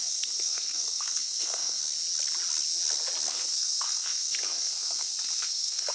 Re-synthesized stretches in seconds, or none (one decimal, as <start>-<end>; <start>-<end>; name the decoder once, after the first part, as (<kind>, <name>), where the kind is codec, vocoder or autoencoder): 0.0-1.8 (codec, SNAC); 3.3-5.9